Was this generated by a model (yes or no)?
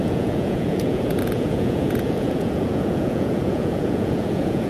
yes